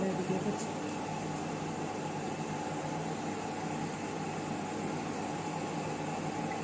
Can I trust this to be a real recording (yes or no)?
yes